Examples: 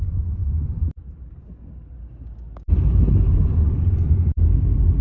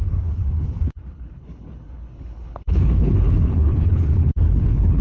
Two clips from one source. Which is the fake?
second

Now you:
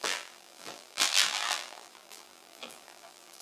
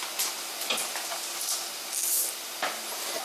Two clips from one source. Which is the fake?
first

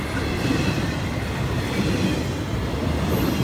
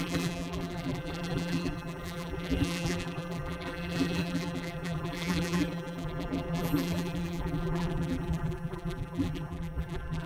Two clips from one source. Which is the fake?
second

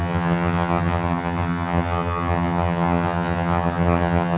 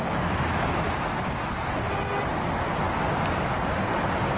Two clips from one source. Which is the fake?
first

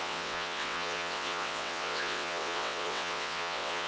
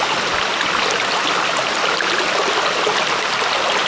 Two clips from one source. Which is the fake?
first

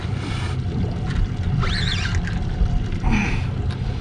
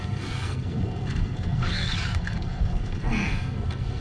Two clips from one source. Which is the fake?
second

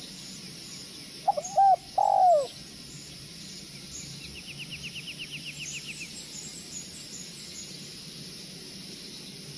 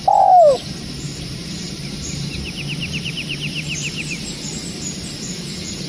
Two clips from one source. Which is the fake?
second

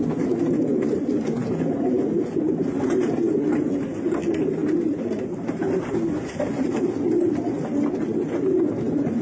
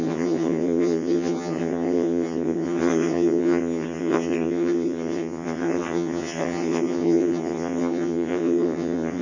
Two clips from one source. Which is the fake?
second